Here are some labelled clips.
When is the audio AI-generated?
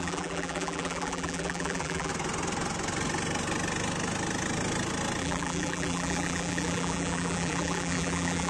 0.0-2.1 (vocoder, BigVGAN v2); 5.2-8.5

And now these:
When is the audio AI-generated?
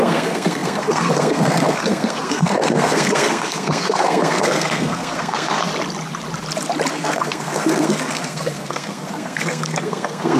0.0-5.7 (codec, SNAC); 6.9-10.4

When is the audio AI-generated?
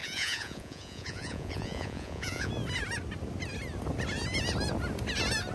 0.0-2.5 (vocoder, Vocos)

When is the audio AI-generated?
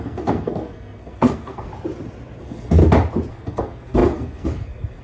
0.0-1.7 (codec, SNAC); 2.4-2.8; 3.3-5.0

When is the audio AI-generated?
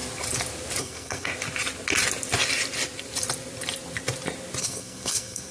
0.8-1.3 (codec, SNAC); 4.6-5.5